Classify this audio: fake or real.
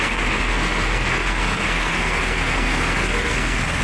fake